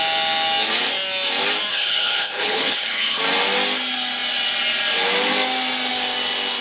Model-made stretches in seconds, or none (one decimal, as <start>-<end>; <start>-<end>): 1.7-3.2